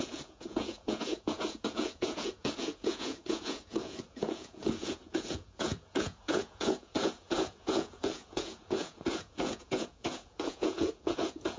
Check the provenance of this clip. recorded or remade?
remade